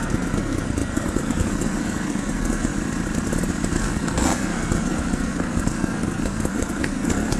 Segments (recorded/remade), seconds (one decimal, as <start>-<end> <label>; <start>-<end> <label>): 0.0-2.7 remade; 2.7-3.7 recorded; 3.7-7.4 remade